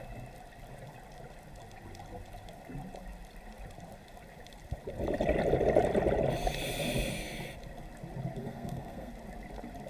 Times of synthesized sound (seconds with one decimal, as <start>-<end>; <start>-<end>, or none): 8.4-9.1